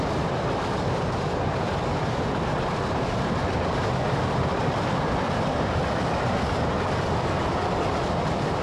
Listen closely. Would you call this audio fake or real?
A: fake